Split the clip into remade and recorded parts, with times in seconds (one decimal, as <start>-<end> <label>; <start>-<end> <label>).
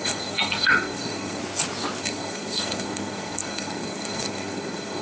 0.0-1.4 remade; 1.4-2.0 recorded; 2.0-5.0 remade